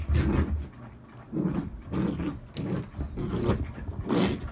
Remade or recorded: recorded